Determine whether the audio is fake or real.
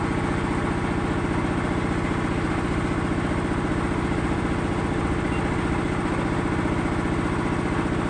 real